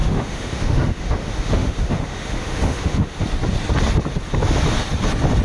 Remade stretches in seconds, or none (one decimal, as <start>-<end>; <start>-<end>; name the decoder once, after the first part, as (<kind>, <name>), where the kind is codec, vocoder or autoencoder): 0.0-3.2 (autoencoder, DAC-VAE)